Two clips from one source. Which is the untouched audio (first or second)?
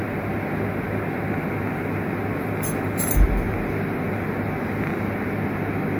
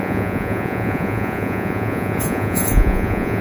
first